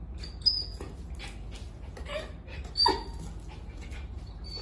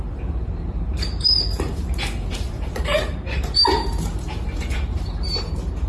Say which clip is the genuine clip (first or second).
first